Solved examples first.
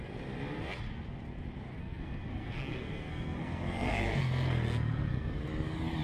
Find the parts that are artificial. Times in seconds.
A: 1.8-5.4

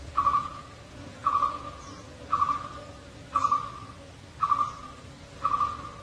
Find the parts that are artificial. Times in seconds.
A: 0.0-2.1

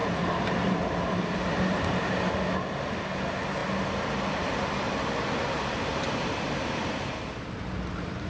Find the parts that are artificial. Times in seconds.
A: 0.0-2.3

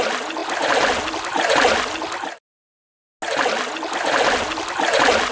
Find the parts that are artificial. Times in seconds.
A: none

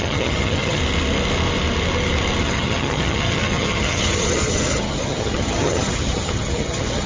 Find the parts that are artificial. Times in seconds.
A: 0.0-0.8; 2.4-7.1

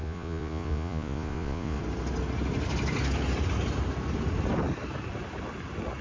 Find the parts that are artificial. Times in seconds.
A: 0.0-1.8

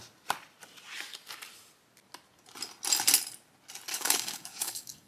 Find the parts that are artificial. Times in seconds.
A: 3.9-5.1

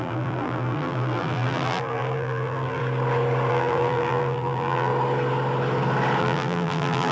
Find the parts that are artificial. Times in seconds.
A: 0.0-2.8; 3.5-4.9; 6.2-7.1